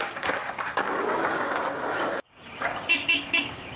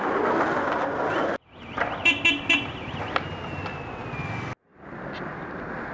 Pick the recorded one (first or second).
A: second